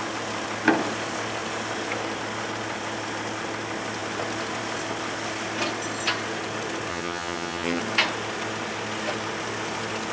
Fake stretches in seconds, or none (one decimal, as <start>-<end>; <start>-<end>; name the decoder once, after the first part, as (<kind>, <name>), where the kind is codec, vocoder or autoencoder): 6.9-7.8 (vocoder, HiFi-GAN)